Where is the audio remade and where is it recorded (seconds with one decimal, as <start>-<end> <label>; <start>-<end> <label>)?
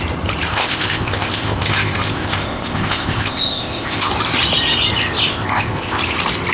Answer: 0.0-0.5 recorded; 0.5-4.1 remade; 4.1-5.3 recorded; 5.3-6.0 remade; 6.0-6.5 recorded